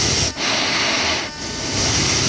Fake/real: real